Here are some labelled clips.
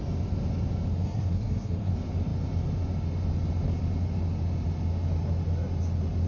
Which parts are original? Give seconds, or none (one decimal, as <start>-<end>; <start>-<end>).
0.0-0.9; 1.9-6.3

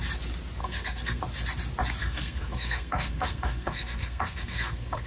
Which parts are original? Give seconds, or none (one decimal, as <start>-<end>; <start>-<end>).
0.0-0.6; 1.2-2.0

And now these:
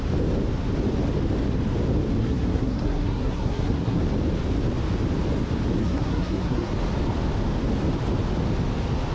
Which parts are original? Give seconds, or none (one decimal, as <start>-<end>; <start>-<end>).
0.0-2.2; 4.0-5.8; 6.7-9.1

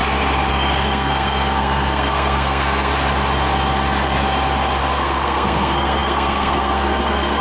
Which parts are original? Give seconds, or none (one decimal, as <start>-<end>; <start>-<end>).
0.0-0.5; 2.9-4.8

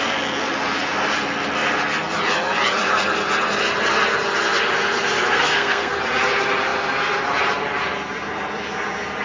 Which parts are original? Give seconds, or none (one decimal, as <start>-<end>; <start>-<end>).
0.0-5.3; 5.9-9.2